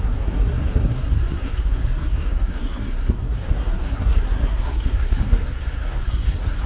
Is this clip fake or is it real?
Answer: fake